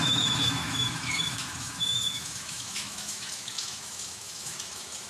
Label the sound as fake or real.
fake